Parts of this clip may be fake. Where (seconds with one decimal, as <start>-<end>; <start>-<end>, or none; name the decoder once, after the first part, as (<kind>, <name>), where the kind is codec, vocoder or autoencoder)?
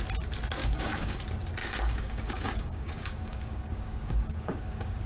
0.6-1.2 (codec, DAC); 1.6-5.1